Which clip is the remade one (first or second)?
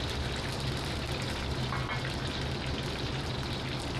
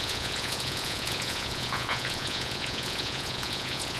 second